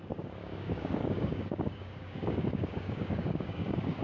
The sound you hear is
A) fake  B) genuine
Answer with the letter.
A